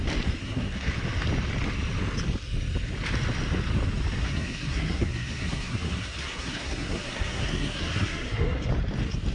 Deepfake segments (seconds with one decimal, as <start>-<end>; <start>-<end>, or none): 0.4-0.9; 4.2-8.7